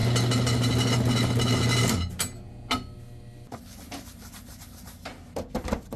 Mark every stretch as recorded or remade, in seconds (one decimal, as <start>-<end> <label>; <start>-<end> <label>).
0.0-6.0 recorded